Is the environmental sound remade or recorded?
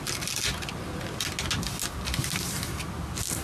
recorded